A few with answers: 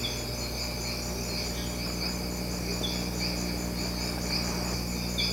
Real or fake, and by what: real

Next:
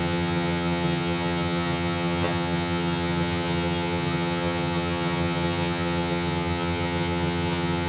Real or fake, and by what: fake, vocoder, HiFi-GAN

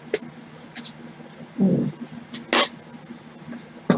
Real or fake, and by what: real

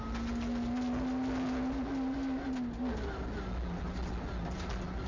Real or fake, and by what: real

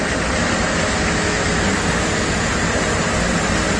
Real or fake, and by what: real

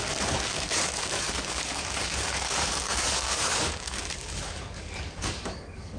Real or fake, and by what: fake, codec, DAC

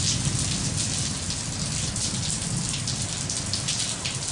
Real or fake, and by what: real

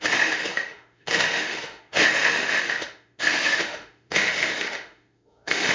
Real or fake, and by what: fake, autoencoder, DAC-VAE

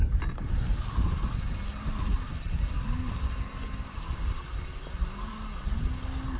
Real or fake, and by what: real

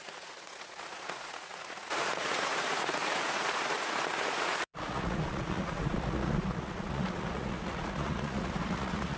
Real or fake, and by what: fake, vocoder, Vocos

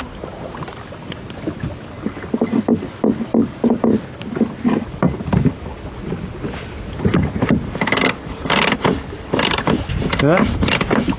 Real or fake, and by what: real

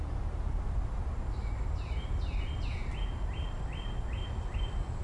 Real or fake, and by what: real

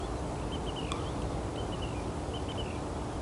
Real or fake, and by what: real